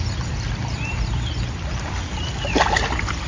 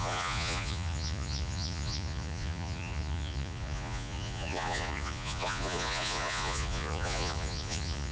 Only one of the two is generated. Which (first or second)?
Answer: second